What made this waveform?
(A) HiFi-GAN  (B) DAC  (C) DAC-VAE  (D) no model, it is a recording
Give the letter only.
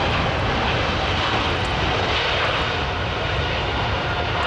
D